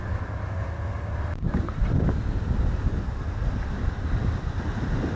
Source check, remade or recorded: recorded